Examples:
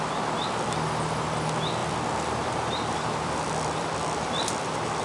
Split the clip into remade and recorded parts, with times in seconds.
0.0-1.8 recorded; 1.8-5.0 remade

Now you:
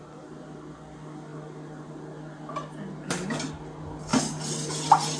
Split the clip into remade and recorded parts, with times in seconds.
0.0-5.2 recorded

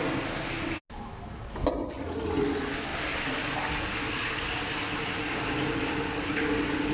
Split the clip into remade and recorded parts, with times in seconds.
0.0-1.1 recorded; 1.1-1.7 remade; 1.7-6.9 recorded